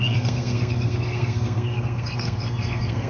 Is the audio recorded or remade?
remade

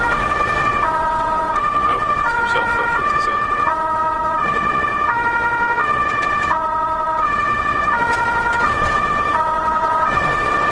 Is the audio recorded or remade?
remade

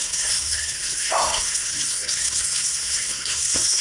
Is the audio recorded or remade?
remade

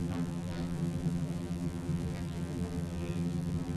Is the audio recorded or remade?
remade